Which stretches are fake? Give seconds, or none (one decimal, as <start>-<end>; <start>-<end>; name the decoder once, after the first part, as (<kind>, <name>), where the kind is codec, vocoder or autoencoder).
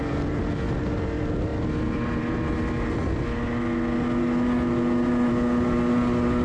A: none